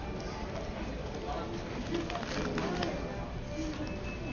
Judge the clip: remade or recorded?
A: recorded